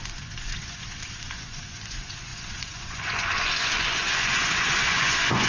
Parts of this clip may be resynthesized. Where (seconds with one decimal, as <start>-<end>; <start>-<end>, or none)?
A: 0.0-5.5